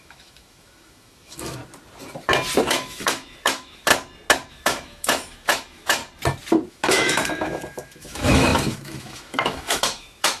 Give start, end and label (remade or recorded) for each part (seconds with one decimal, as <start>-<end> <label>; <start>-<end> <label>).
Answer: 0.0-1.6 remade; 1.6-2.7 recorded; 2.7-3.9 remade; 3.9-4.5 recorded; 4.5-6.0 remade; 6.0-6.7 recorded; 6.7-10.4 remade